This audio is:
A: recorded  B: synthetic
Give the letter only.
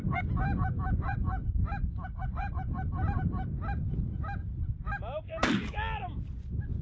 A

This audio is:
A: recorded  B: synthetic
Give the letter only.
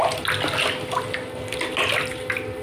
A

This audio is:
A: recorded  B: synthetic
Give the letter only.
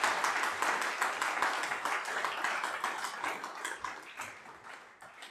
A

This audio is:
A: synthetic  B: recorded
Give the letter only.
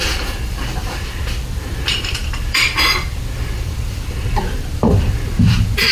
A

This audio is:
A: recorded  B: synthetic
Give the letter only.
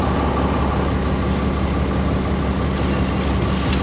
A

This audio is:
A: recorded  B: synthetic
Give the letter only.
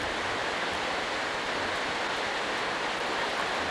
A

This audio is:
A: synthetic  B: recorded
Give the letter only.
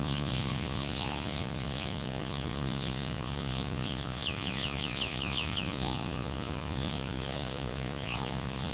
A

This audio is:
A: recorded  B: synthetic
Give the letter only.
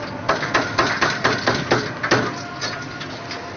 A